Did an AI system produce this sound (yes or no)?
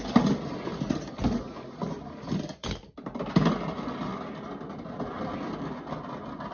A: no